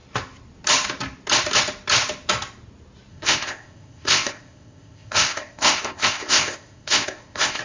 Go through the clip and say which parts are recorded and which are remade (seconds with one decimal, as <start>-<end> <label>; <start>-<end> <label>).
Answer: 0.0-3.1 recorded; 3.1-7.6 remade